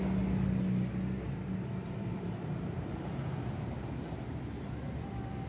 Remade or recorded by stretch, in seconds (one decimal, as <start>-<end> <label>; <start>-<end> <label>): 0.0-1.8 recorded; 1.8-5.1 remade; 5.1-5.5 recorded